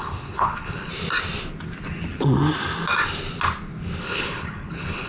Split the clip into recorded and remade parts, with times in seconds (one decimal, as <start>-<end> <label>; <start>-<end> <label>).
0.0-0.9 remade; 0.9-4.0 recorded; 4.0-5.1 remade